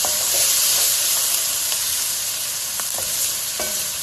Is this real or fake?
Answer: fake